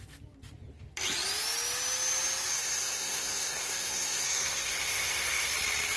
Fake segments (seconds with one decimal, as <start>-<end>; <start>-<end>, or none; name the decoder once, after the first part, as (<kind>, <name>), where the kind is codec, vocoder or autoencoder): 2.5-5.5 (codec, SNAC)